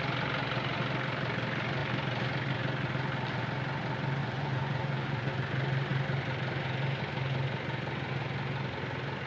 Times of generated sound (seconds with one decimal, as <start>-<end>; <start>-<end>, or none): 4.2-5.3